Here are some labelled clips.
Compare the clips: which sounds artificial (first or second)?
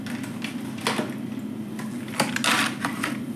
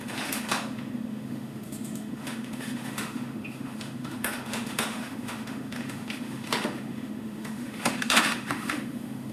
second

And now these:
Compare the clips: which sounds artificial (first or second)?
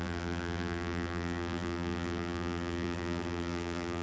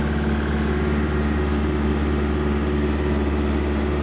first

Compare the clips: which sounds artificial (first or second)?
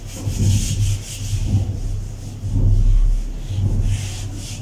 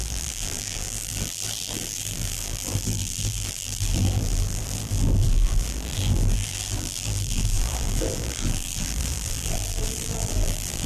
second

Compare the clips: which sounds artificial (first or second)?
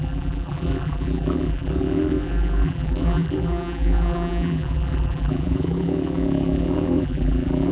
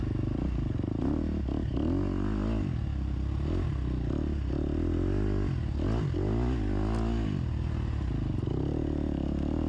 first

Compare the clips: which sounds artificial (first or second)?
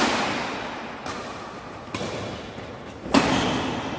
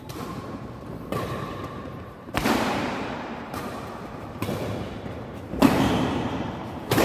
second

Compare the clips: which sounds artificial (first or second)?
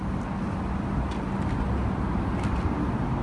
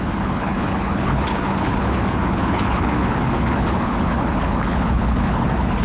second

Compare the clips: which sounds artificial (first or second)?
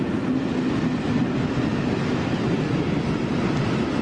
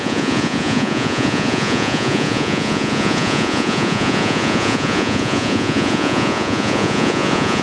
second